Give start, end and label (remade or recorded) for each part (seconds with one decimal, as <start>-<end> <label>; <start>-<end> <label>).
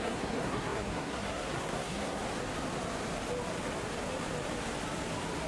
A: 0.0-2.2 remade; 2.2-5.5 recorded